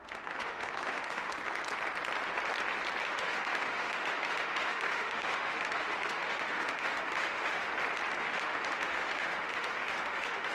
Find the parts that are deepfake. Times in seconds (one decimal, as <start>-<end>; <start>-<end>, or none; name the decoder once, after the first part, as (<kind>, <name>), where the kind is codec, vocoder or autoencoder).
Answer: 0.0-1.4 (autoencoder, DAC-VAE); 3.0-7.7; 8.2-10.5